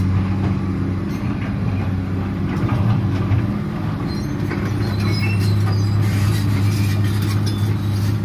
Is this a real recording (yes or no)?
yes